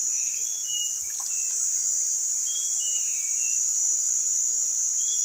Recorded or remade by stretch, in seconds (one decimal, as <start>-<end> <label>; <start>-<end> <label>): 0.0-2.2 recorded; 2.2-3.2 remade; 3.2-5.2 recorded